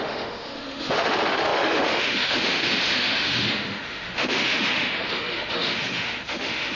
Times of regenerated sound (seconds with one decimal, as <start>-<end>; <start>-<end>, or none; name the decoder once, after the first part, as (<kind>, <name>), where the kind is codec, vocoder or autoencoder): 0.0-6.7 (autoencoder, DAC-VAE)